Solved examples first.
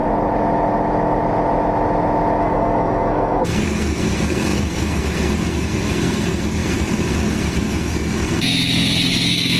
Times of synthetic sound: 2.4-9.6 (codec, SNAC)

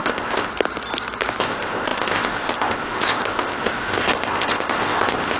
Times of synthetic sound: 0.0-0.5 (codec, ZipCodec); 1.4-5.4

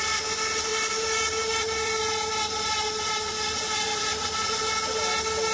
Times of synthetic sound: 0.7-4.0 (vocoder, BigVGAN v2)

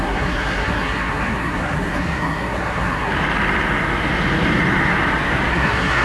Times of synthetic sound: 0.0-3.1 (codec, SNAC); 5.5-6.0

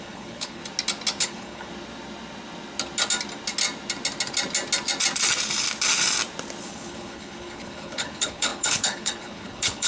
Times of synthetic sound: 0.0-0.6 (codec, HILCodec); 1.2-1.7; 6.6-9.9

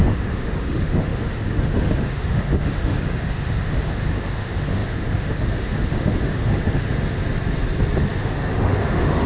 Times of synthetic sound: 0.0-7.2 (autoencoder, DAC-VAE); 8.2-9.3

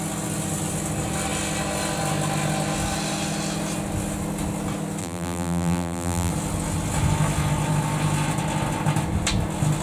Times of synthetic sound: 5.0-6.3 (vocoder, BigVGAN v2)

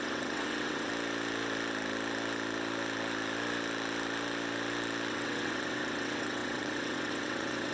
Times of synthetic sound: 0.0-0.9 (vocoder, WaveNeXt); 5.1-7.7